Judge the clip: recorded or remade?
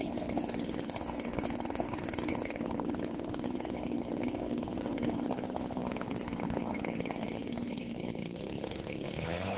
remade